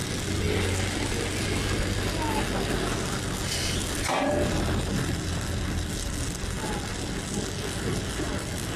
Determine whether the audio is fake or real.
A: real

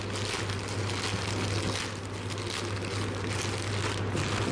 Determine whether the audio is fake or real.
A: real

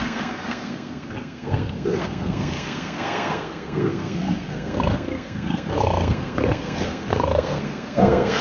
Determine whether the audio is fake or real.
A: fake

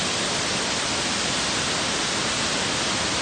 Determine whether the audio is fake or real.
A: real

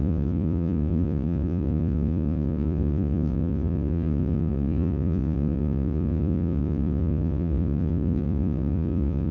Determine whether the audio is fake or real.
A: fake